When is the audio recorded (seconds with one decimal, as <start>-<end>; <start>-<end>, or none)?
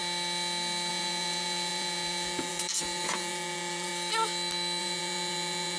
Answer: 0.0-0.9; 3.9-4.8